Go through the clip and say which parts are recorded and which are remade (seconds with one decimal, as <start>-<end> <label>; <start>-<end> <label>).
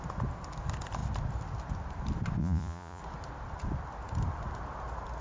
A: 0.0-2.4 recorded; 2.4-3.0 remade; 3.0-5.2 recorded